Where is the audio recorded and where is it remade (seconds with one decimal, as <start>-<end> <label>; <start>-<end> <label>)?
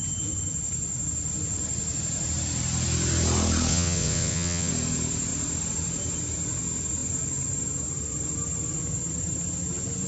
0.0-3.7 recorded; 3.7-4.7 remade; 4.7-10.1 recorded